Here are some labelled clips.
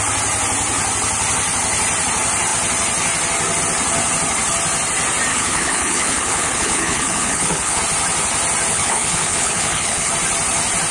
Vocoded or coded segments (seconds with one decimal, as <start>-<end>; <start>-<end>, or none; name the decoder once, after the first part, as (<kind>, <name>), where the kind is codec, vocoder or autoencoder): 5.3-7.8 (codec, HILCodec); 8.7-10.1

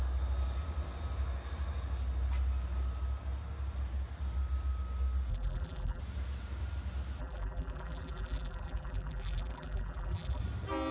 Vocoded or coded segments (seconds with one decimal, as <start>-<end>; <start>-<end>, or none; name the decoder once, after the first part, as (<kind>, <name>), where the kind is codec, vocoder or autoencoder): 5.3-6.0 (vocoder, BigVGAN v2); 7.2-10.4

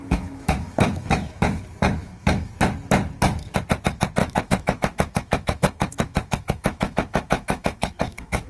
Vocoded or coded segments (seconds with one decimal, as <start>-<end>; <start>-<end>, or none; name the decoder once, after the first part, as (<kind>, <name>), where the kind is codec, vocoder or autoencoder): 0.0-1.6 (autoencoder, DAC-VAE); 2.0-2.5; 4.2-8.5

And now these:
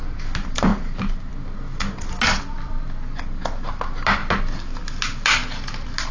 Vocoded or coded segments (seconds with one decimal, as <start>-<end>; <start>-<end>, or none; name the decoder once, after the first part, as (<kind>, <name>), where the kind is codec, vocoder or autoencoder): none

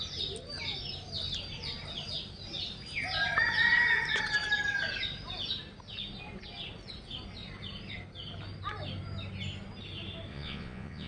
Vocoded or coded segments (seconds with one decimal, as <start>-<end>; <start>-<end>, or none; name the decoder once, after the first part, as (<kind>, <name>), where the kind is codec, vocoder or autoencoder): 10.3-11.1 (vocoder, Vocos)